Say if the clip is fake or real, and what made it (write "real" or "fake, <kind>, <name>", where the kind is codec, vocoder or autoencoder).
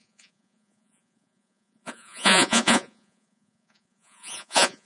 fake, vocoder, Vocos